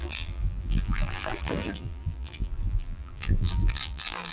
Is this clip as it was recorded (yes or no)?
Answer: no